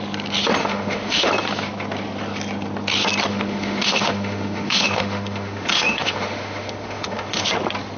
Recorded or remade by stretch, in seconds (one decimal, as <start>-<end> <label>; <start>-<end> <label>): 0.0-0.6 recorded; 0.6-1.3 remade; 1.3-3.3 recorded; 3.3-7.4 remade; 7.4-8.0 recorded